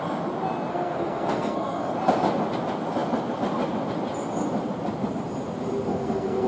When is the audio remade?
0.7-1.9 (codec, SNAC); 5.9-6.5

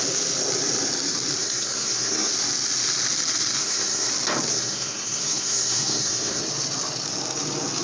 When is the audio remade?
1.4-2.3 (codec, SNAC); 3.6-4.1; 4.5-6.4